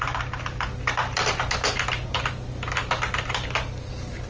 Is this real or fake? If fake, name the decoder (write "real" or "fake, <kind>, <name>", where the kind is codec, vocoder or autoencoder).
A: real